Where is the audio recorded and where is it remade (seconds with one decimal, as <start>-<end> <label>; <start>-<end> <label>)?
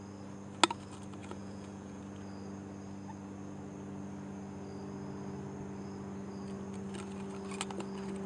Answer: 0.0-1.2 recorded; 1.2-2.0 remade; 2.0-8.3 recorded